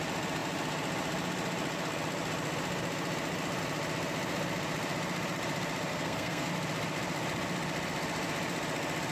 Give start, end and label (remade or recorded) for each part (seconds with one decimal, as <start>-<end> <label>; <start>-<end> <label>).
0.0-5.9 recorded; 5.9-6.5 remade; 6.5-9.1 recorded